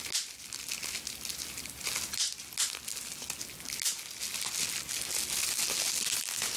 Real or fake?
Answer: real